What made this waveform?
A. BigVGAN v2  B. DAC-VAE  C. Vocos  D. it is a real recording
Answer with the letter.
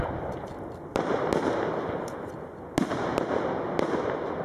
D